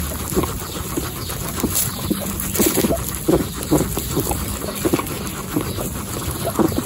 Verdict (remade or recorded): recorded